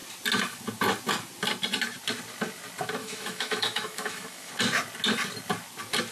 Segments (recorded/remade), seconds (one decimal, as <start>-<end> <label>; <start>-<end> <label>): 0.0-3.0 recorded; 3.0-4.5 remade; 4.5-6.1 recorded